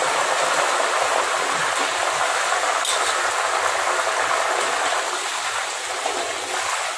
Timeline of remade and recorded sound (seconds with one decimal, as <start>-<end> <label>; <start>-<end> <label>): 0.0-4.9 recorded; 4.9-6.3 remade; 6.3-7.0 recorded

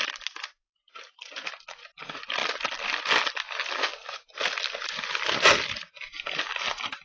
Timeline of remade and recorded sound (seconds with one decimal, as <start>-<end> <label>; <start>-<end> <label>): 0.0-0.6 recorded; 0.6-1.9 remade; 1.9-7.0 recorded

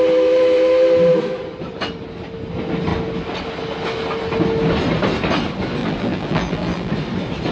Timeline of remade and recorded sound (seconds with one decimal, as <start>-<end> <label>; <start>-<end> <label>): 0.0-5.8 recorded; 5.8-6.9 remade; 6.9-7.5 recorded

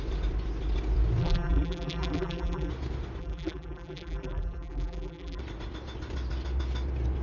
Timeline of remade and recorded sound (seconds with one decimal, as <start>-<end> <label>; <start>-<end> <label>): 0.0-1.2 recorded; 1.2-2.7 remade; 2.7-3.2 recorded; 3.2-5.4 remade; 5.4-7.2 recorded

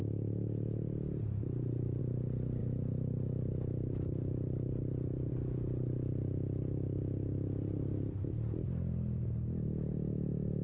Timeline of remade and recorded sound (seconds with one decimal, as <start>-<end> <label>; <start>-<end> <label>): 0.0-2.0 remade; 2.0-2.6 recorded; 2.6-5.3 remade; 5.3-10.6 recorded